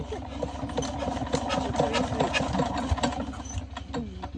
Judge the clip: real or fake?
real